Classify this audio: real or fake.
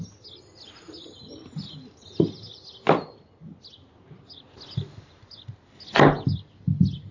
real